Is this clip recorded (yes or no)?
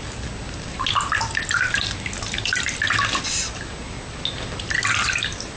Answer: yes